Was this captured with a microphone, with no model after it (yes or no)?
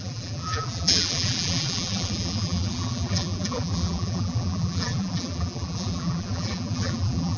no